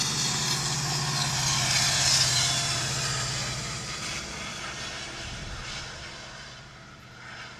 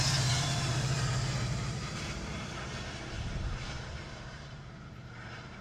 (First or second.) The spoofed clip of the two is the second